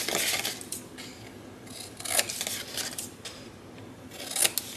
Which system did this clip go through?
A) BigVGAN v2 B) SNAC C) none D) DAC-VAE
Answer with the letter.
C